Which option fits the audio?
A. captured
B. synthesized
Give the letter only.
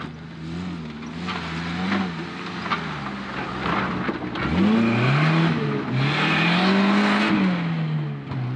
A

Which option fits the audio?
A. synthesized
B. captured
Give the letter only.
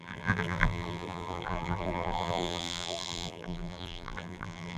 A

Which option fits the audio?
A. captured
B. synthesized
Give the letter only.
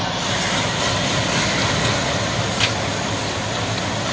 A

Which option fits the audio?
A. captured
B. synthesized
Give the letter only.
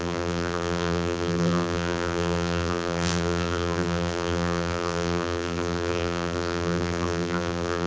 B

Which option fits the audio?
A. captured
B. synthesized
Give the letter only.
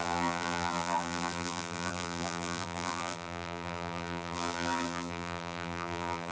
B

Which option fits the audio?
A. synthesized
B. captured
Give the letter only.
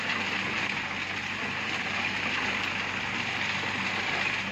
B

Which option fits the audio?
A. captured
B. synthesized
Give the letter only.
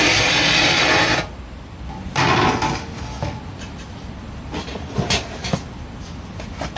A